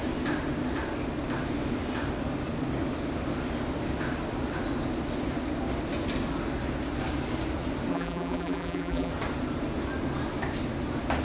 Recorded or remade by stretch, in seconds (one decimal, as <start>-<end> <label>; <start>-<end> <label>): 0.0-7.9 recorded; 7.9-9.1 remade; 9.1-11.2 recorded